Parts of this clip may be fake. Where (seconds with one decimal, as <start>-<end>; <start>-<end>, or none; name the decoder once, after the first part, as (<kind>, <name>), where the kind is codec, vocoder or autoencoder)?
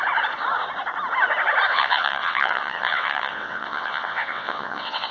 1.7-5.1 (vocoder, WaveNeXt)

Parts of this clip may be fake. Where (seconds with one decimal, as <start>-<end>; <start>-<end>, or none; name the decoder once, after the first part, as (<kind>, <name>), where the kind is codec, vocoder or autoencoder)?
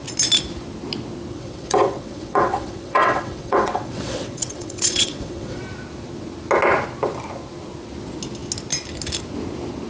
1.3-5.6 (vocoder, WaveNeXt)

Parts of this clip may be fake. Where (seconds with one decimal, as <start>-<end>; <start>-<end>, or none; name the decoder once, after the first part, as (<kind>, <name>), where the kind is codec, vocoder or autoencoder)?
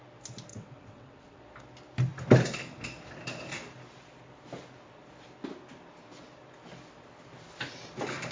0.5-1.4 (vocoder, WaveNeXt)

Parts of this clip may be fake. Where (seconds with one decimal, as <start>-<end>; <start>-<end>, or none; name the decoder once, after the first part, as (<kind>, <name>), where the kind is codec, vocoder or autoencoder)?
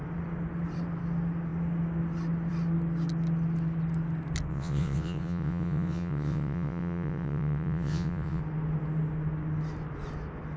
4.5-8.4 (vocoder, WaveNeXt)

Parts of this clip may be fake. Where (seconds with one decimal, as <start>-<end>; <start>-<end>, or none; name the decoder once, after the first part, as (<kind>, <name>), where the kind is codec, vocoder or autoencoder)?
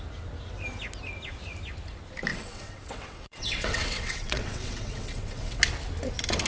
2.3-5.6 (vocoder, WaveNeXt)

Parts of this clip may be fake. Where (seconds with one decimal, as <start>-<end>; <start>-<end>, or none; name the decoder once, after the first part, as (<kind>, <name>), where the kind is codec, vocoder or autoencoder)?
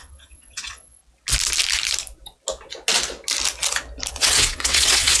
0.0-1.0 (vocoder, WaveNeXt); 4.1-5.2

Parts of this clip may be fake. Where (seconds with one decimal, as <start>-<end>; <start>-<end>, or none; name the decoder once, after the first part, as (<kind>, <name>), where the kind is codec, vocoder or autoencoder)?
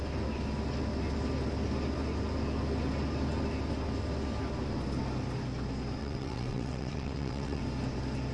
6.0-7.6 (vocoder, WaveNeXt)